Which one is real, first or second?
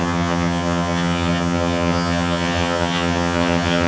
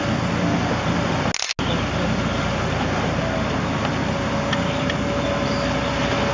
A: second